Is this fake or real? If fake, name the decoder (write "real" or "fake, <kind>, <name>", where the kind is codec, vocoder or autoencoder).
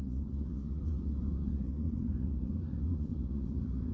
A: fake, vocoder, Vocos